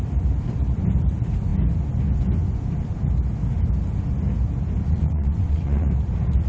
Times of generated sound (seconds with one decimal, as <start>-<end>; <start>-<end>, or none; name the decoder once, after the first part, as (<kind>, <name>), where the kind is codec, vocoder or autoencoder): 4.9-5.9 (vocoder, WaveNeXt)